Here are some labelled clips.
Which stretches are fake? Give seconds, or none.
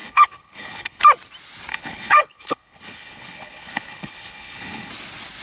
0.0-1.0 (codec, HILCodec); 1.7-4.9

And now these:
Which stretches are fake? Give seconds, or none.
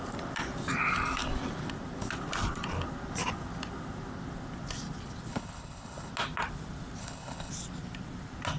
5.3-6.1 (codec, HILCodec); 7.0-7.5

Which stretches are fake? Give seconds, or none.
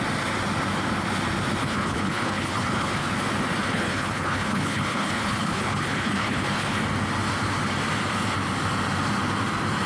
1.6-3.1 (codec, HILCodec); 3.6-6.8